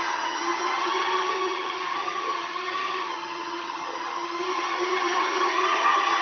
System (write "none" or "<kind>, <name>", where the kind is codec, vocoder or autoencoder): vocoder, HiFi-GAN